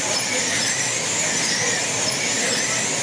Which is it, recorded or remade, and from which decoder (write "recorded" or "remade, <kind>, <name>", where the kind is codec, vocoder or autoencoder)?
recorded